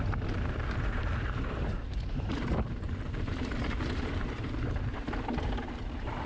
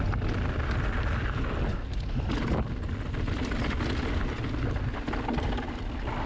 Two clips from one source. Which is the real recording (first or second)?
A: second